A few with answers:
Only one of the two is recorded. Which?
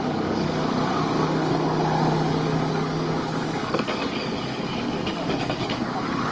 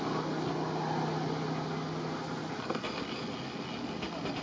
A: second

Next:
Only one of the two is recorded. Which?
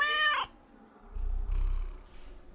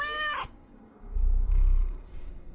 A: first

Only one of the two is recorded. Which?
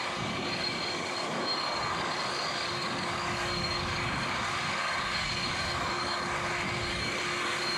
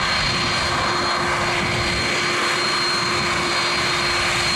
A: second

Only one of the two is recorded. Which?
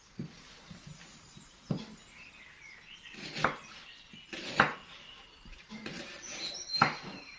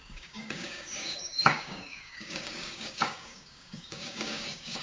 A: first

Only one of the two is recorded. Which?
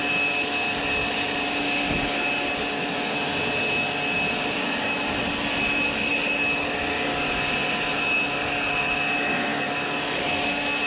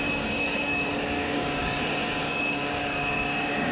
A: first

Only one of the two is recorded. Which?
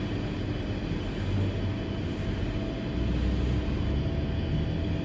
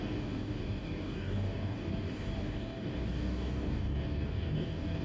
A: first